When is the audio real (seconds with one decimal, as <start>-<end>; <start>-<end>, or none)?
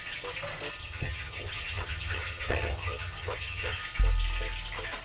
0.0-0.8; 3.8-5.0